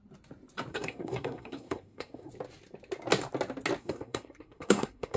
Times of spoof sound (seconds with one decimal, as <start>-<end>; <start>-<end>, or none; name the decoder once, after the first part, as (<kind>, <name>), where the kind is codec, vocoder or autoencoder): 0.7-2.3 (codec, SNAC); 3.8-5.2